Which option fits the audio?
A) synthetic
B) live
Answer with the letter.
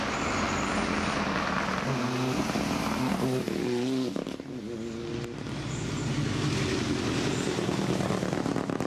B